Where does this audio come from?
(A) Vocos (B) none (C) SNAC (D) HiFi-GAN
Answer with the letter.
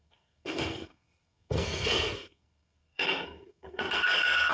C